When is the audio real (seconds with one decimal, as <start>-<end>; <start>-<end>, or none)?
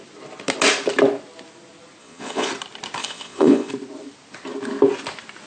0.0-2.0; 2.5-3.0; 3.7-5.5